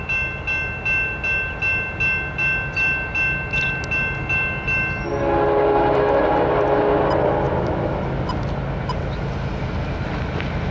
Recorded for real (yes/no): yes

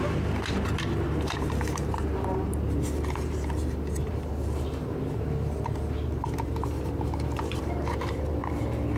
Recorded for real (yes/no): no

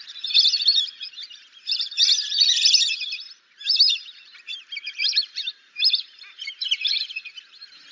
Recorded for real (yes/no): no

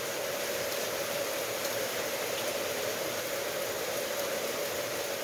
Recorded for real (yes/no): yes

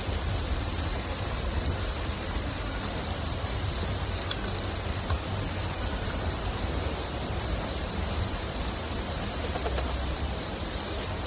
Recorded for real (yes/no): no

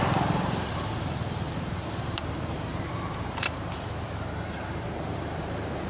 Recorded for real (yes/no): no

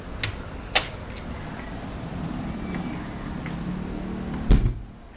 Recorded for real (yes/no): yes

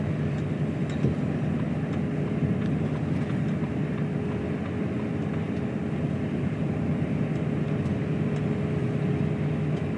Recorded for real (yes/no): yes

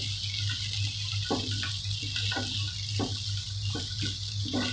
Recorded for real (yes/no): yes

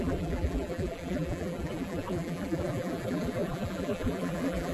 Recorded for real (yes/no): no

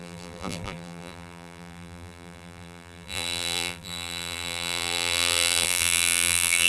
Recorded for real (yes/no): no